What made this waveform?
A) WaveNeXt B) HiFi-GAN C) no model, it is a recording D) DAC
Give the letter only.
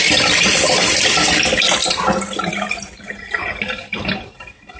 C